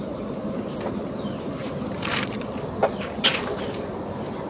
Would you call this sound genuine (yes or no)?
yes